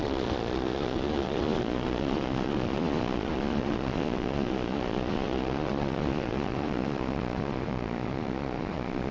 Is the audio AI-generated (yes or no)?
yes